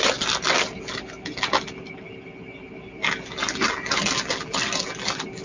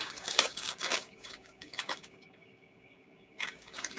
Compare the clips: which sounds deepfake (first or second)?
second